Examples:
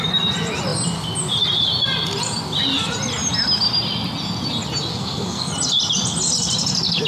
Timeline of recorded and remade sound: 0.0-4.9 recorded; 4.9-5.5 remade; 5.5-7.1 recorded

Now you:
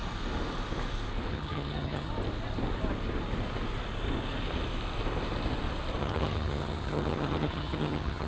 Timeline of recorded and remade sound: 0.0-1.3 recorded; 1.3-2.1 remade; 2.1-6.0 recorded; 6.0-8.3 remade

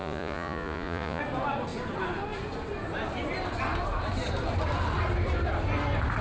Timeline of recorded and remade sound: 0.0-1.2 remade; 1.2-6.2 recorded

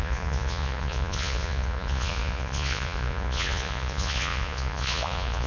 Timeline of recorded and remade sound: 0.0-5.5 remade